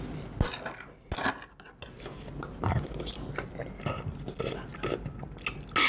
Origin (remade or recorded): recorded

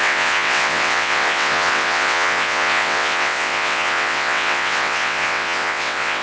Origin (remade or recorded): remade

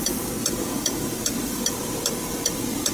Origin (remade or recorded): remade